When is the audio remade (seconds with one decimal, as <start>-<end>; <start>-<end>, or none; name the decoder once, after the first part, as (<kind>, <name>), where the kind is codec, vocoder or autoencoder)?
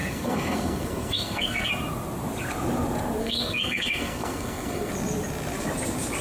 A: 0.0-1.7 (codec, SNAC); 3.2-4.9